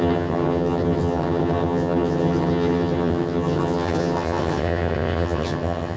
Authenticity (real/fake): fake